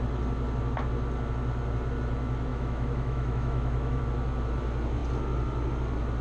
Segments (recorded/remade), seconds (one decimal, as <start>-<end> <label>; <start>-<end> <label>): 0.0-2.5 recorded; 2.5-4.0 remade; 4.0-6.2 recorded